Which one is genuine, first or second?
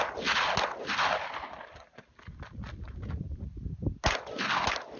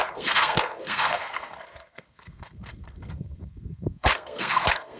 first